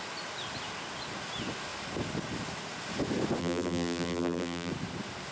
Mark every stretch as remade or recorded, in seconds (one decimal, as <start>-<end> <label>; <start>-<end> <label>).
0.0-3.4 recorded; 3.4-4.7 remade; 4.7-5.3 recorded